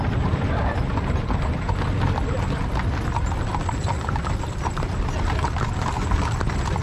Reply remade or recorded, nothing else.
recorded